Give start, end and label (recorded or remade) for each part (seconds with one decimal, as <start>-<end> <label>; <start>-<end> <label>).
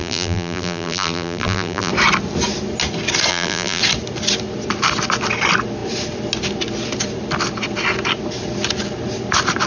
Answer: 0.0-1.9 remade; 1.9-3.3 recorded; 3.3-3.8 remade; 3.8-9.7 recorded